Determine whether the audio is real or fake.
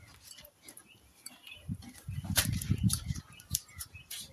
fake